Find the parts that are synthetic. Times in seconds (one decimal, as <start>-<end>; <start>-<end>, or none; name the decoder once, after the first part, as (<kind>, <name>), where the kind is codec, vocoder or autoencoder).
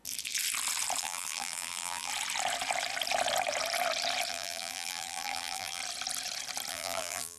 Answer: 1.0-2.1 (vocoder, BigVGAN v2); 4.3-5.8; 6.7-7.4